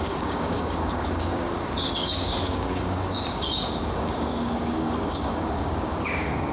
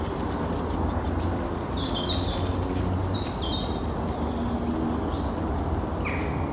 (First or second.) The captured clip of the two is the second